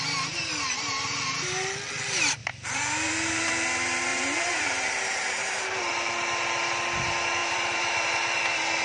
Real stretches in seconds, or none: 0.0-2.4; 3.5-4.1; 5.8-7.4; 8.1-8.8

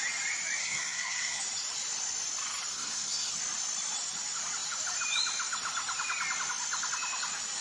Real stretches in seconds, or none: 0.0-0.6; 1.4-2.7; 3.3-7.6

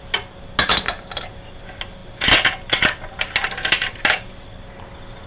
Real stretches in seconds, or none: 0.0-5.3

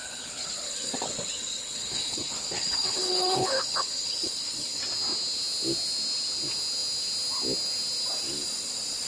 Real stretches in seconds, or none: 4.8-9.1